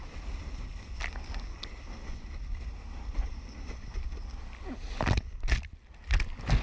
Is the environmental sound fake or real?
real